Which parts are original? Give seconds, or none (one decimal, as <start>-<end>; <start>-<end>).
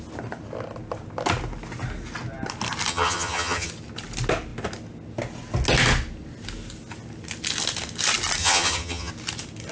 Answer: 0.0-2.9; 3.7-8.4; 9.1-9.7